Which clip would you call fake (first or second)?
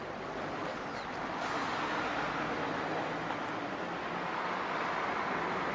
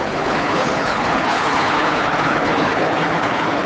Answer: second